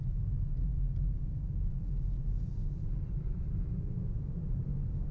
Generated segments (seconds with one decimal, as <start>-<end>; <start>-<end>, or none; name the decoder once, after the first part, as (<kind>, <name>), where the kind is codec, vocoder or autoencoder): none

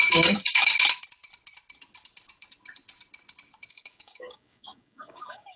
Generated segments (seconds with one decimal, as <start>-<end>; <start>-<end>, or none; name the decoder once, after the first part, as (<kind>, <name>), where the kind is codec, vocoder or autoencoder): 0.0-0.7 (codec, DAC); 3.7-5.6

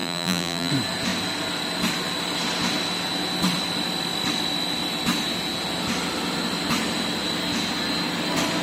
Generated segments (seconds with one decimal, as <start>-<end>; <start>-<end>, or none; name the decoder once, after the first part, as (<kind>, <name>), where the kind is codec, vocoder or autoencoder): 0.0-0.7 (vocoder, BigVGAN v2)

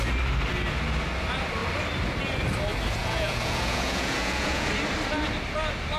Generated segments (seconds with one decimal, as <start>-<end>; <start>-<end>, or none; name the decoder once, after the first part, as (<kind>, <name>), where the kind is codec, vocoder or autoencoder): 3.0-4.7 (vocoder, Vocos)

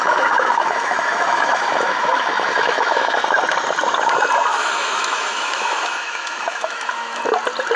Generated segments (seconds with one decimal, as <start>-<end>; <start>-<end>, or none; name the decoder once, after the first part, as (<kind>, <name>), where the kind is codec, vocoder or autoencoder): 0.0-3.2 (autoencoder, DAC-VAE); 4.5-7.2

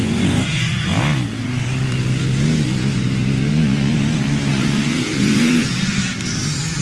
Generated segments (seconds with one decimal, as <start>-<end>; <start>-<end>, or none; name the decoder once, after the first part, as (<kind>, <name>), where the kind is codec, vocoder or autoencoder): 0.0-0.9 (vocoder, Vocos); 3.5-3.9; 4.5-5.7